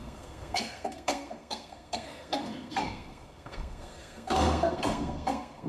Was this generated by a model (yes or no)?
yes